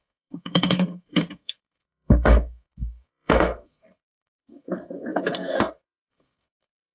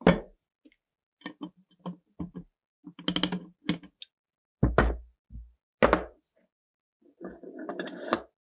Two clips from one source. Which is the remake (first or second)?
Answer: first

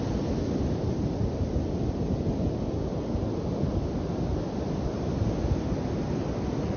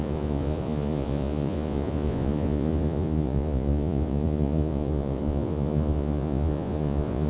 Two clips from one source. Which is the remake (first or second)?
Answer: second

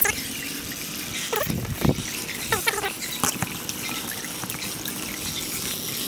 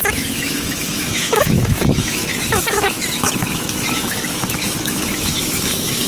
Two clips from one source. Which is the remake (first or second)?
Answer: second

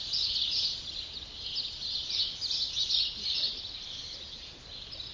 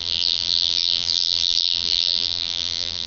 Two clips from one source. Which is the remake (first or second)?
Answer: second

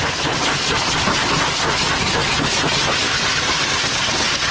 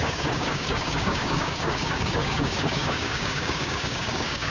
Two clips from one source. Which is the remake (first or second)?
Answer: second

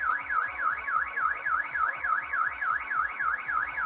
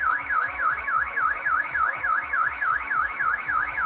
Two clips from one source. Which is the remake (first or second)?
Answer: second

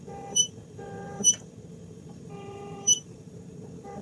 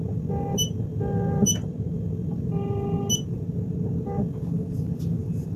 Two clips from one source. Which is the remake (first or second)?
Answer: first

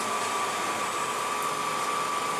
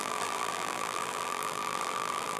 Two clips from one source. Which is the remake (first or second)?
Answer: second